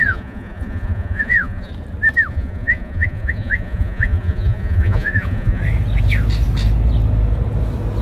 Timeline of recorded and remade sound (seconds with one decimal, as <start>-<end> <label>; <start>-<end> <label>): 0.0-1.7 remade; 1.7-2.3 recorded; 2.3-5.6 remade; 5.6-8.0 recorded